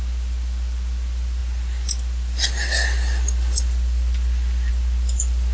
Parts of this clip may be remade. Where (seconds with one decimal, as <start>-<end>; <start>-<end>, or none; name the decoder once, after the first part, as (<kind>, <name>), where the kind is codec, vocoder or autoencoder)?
none